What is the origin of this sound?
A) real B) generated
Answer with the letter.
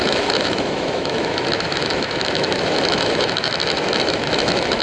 B